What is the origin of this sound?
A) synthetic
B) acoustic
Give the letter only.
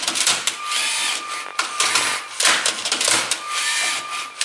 B